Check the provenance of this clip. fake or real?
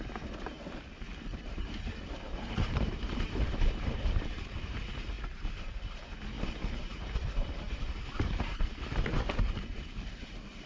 fake